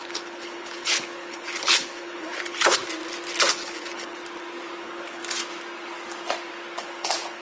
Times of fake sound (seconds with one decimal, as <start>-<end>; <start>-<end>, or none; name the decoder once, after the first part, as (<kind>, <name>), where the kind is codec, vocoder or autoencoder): 0.0-2.8 (codec, HILCodec); 3.5-4.2; 4.8-5.2; 6.8-7.4